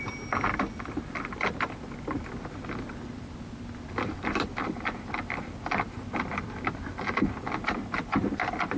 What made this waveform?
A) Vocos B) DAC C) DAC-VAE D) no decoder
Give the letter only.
D